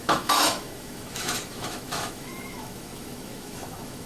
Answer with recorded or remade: remade